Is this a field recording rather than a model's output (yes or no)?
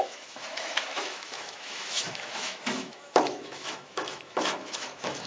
no